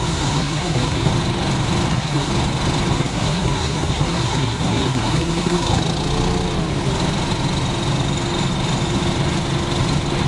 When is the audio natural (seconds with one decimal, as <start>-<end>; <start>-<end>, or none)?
1.1-1.9; 2.3-2.9; 5.8-10.3